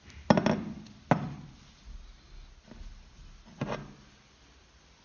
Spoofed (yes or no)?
no